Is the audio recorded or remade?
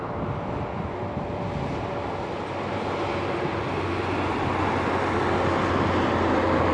recorded